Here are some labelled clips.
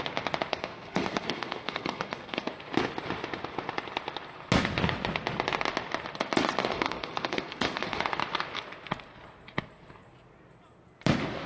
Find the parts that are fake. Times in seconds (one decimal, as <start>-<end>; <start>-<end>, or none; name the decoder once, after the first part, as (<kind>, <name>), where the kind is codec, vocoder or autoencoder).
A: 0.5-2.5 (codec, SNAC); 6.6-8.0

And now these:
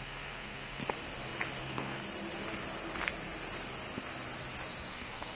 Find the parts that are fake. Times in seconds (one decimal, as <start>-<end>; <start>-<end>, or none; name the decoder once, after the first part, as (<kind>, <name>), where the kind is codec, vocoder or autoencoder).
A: 0.0-0.8 (codec, SNAC); 1.6-2.0; 4.9-5.4

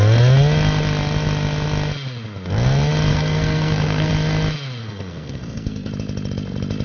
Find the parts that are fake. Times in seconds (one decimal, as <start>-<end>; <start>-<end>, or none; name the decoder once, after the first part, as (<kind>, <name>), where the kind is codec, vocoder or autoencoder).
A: 3.1-4.1 (codec, SNAC); 4.8-5.9

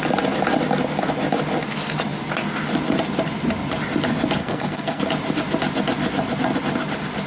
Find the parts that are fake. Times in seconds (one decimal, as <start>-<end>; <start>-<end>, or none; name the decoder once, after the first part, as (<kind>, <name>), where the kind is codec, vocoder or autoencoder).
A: 4.4-5.0 (codec, SNAC)

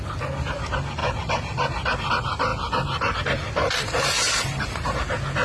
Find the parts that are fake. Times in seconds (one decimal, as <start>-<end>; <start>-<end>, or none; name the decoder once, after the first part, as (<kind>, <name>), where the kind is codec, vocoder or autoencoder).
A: none

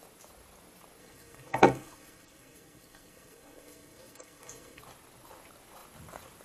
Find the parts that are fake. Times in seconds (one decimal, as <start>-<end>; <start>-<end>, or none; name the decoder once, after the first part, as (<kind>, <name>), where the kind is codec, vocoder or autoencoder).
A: 1.0-4.8 (codec, SNAC)

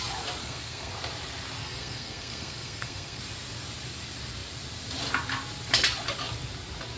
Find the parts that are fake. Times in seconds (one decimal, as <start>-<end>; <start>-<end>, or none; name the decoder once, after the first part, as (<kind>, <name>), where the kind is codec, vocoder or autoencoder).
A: 0.4-0.9 (codec, SNAC); 1.6-3.2